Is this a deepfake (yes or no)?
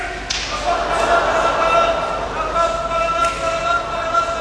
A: no